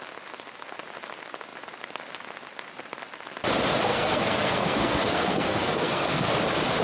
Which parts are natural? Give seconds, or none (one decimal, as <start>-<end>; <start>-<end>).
0.0-3.9; 6.3-6.8